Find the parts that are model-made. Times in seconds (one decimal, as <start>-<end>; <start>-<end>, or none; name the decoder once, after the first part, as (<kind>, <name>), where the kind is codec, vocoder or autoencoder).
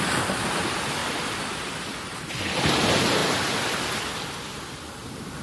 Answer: none